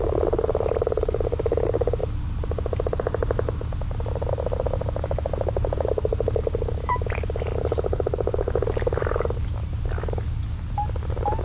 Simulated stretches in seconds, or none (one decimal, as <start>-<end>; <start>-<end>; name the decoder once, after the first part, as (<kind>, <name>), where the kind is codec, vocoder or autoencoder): none